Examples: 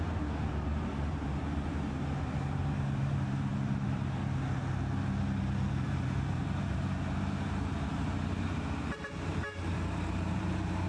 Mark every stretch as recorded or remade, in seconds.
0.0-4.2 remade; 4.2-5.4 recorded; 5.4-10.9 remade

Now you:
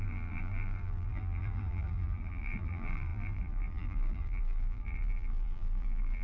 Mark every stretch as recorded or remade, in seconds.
0.0-6.2 remade

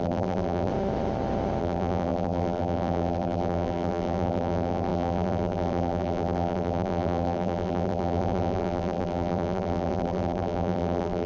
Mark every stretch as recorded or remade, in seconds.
0.0-0.7 remade; 0.7-1.6 recorded; 1.6-11.3 remade

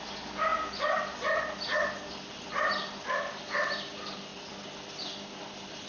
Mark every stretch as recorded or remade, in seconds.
0.0-0.5 recorded; 0.5-1.9 remade; 1.9-5.9 recorded

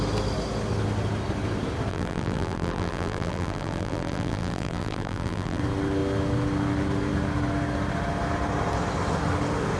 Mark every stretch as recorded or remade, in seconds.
0.0-1.9 recorded; 1.9-5.6 remade; 5.6-9.8 recorded

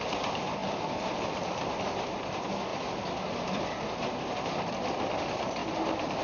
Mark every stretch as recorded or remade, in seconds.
0.0-0.6 recorded; 0.6-1.6 remade; 1.6-2.7 recorded; 2.7-5.1 remade; 5.1-5.6 recorded; 5.6-6.2 remade

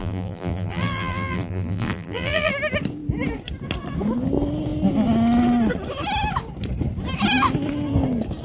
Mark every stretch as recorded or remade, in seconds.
0.0-2.5 remade; 2.5-8.4 recorded